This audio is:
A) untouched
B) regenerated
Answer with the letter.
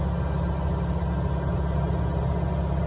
A